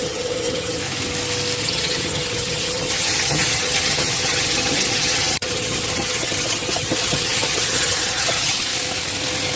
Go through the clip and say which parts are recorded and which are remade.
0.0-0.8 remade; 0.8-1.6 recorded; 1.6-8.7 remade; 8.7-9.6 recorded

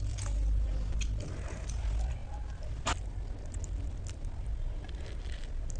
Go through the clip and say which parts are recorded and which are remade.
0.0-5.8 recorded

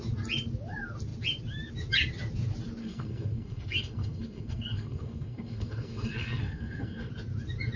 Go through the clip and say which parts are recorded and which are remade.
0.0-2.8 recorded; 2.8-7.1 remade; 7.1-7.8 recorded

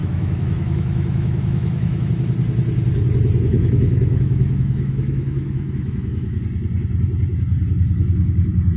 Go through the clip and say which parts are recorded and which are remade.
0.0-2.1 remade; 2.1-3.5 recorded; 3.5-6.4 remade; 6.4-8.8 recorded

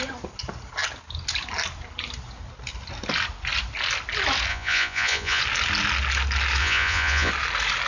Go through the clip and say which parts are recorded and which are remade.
0.0-4.5 recorded; 4.5-5.4 remade; 5.4-6.6 recorded; 6.6-7.3 remade; 7.3-7.9 recorded